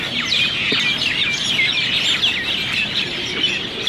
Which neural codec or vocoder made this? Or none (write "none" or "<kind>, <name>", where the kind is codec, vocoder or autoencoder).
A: none